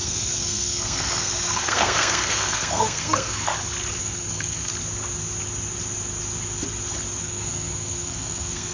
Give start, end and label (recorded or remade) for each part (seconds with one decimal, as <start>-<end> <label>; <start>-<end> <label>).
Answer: 0.0-3.5 remade; 3.5-4.0 recorded; 4.0-4.7 remade; 4.7-7.2 recorded; 7.2-8.7 remade